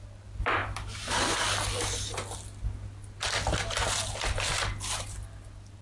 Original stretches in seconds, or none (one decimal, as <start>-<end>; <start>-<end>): 0.0-5.8